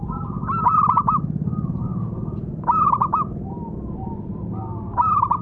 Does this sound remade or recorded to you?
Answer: recorded